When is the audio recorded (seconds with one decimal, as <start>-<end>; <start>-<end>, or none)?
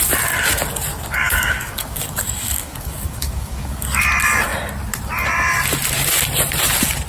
0.0-0.9; 4.0-7.1